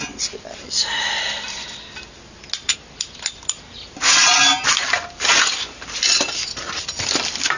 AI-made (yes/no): no